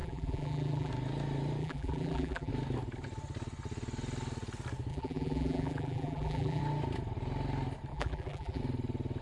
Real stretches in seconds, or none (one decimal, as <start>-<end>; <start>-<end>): 0.9-1.6; 2.5-4.9; 6.6-7.9; 8.6-9.2